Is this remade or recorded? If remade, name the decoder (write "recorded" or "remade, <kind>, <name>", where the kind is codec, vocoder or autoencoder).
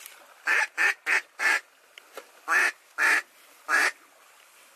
recorded